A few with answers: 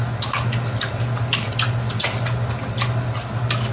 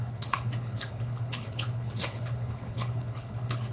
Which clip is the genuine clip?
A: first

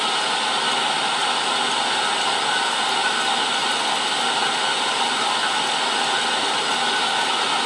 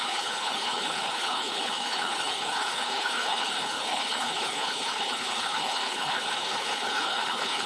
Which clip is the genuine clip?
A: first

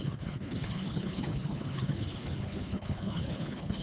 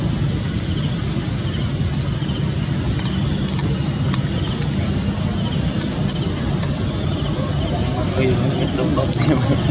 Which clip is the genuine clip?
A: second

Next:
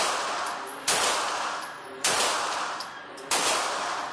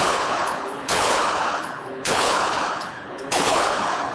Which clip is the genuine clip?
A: first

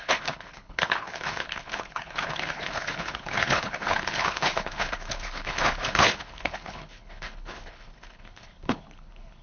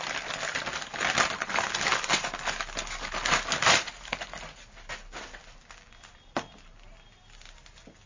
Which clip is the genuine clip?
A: second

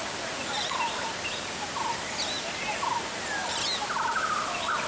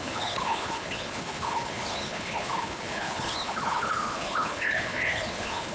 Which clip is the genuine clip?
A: first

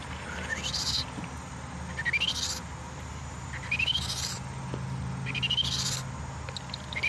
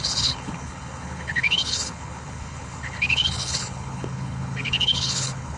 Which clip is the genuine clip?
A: first